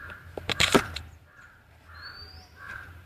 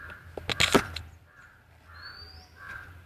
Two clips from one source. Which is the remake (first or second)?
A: first